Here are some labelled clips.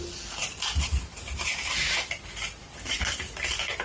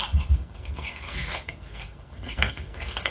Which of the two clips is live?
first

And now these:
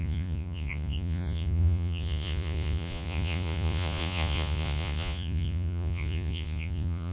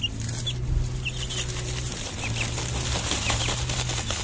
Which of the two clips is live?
second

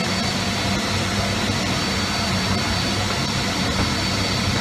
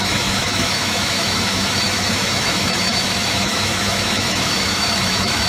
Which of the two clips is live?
first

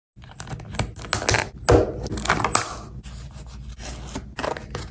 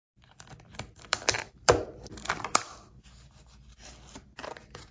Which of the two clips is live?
first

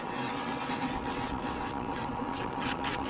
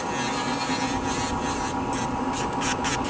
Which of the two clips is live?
second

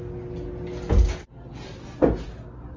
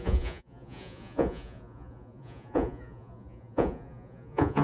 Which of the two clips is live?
first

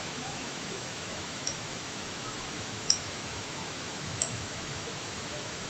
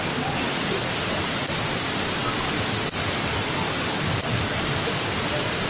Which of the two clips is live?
second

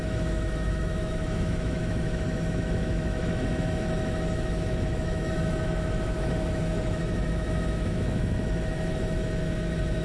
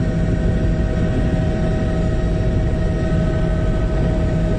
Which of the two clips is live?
second